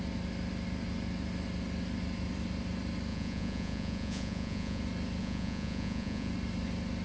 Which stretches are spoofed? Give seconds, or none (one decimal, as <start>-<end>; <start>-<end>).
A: 3.1-4.8; 5.2-6.3